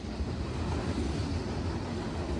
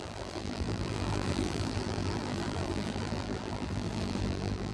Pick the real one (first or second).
first